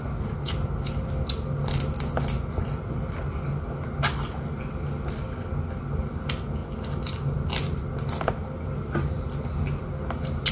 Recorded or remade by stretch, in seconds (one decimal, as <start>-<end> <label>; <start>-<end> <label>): 0.0-10.5 recorded